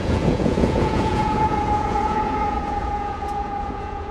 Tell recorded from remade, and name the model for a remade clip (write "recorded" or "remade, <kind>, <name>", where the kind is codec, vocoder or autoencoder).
remade, vocoder, Vocos